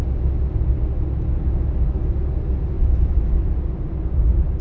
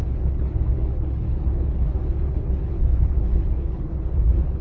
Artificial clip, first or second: second